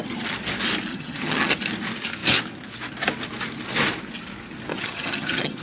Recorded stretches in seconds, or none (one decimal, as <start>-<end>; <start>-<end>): 0.0-0.9; 1.6-4.7